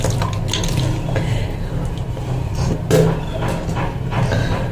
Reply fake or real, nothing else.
real